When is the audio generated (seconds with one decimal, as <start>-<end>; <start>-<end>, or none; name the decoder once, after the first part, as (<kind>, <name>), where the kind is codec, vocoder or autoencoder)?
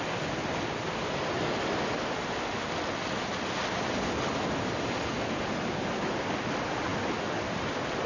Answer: none